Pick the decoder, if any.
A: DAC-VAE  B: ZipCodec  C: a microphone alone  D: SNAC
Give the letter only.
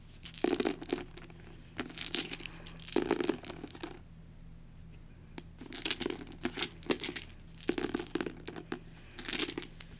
C